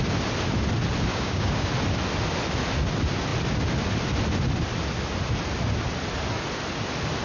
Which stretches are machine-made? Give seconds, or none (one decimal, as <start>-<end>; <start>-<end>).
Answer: 1.1-1.7